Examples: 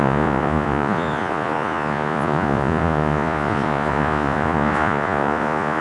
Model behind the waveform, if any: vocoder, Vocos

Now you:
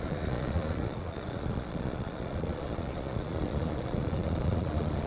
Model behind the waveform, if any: vocoder, Vocos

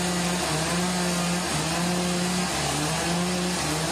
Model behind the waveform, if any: none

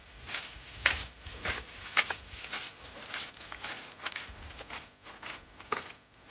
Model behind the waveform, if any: none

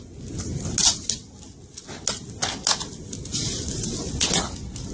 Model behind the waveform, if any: none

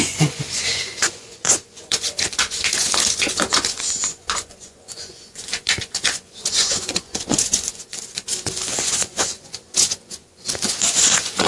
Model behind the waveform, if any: vocoder, Vocos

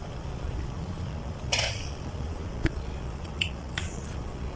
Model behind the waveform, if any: vocoder, Vocos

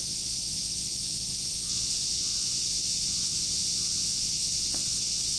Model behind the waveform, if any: vocoder, Vocos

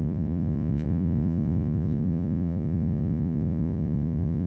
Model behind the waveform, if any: vocoder, Vocos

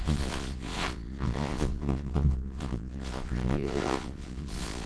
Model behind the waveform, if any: vocoder, Vocos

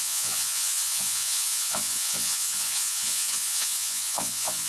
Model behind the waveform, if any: vocoder, Vocos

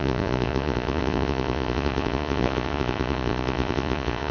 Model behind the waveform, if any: vocoder, Vocos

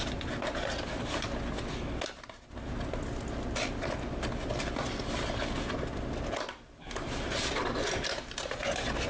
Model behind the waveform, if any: none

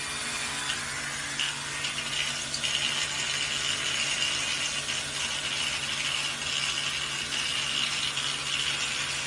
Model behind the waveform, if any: none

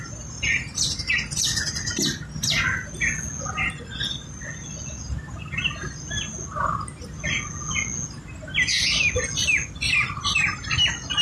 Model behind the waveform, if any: none